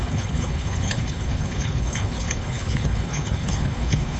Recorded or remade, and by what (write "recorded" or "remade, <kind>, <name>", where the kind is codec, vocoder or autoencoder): remade, codec, HILCodec